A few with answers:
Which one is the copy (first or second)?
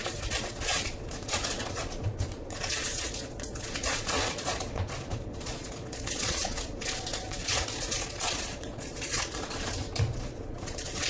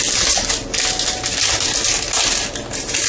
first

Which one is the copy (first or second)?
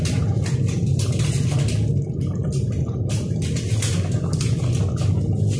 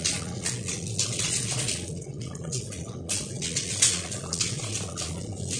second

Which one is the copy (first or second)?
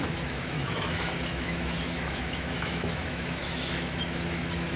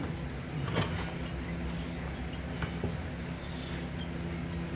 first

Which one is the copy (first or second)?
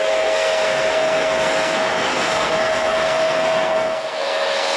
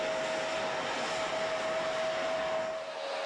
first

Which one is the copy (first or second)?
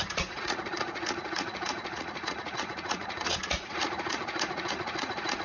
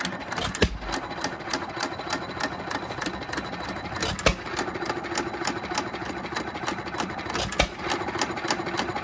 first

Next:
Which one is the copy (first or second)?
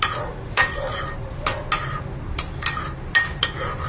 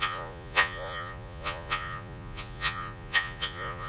second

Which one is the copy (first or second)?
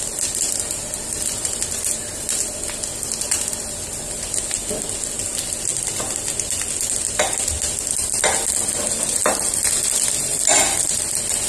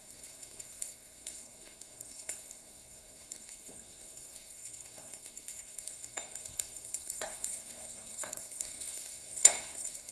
second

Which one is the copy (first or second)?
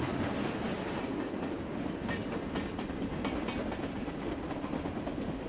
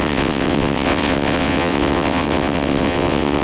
second